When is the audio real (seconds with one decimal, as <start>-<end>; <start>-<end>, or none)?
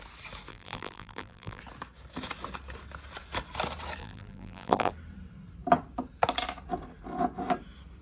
0.0-0.5; 1.6-4.0; 4.9-8.0